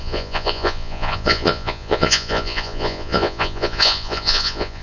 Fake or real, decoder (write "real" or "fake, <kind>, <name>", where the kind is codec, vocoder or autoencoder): fake, vocoder, Vocos